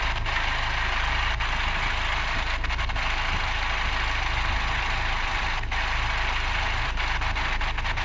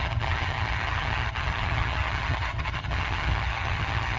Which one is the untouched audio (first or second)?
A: first